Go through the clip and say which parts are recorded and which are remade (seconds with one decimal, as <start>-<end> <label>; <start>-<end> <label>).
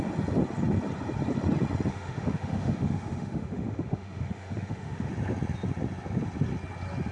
0.0-1.9 recorded; 1.9-5.1 remade; 5.1-7.1 recorded